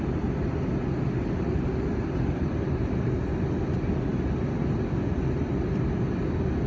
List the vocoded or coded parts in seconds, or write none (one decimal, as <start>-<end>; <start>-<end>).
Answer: none